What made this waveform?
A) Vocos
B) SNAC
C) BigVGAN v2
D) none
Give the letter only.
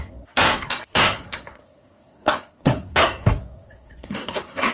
B